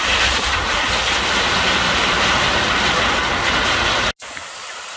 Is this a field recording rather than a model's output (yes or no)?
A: yes